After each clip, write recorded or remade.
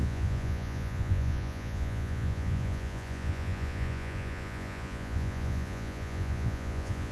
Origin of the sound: remade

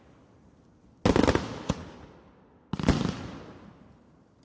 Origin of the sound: recorded